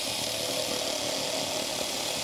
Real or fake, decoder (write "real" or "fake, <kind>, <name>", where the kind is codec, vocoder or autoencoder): real